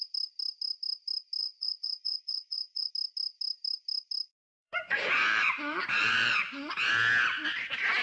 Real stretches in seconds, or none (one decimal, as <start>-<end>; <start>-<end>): 0.0-1.4; 2.9-4.3; 6.9-8.0